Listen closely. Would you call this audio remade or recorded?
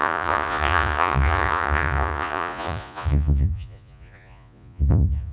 remade